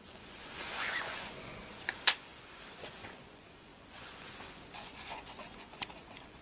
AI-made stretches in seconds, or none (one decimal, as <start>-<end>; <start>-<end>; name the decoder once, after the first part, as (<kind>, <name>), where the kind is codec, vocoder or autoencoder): 0.0-6.4 (vocoder, Vocos)